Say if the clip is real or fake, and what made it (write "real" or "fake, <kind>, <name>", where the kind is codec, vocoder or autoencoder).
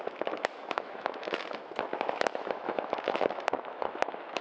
fake, autoencoder, DAC-VAE